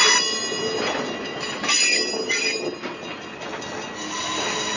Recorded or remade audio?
recorded